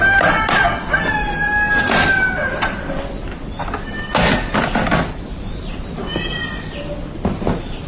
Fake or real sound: real